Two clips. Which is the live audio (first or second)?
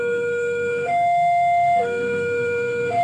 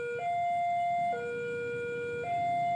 second